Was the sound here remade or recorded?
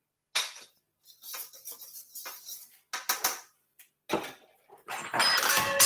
recorded